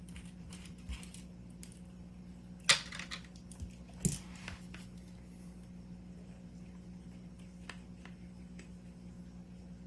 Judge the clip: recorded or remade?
recorded